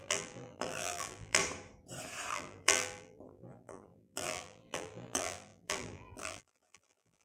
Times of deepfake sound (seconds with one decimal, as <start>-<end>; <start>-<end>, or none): 0.0-1.4; 2.3-7.2